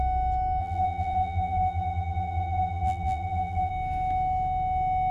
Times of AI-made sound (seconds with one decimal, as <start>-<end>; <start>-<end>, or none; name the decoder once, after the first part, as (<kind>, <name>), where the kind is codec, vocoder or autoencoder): 0.6-3.7 (vocoder, BigVGAN v2)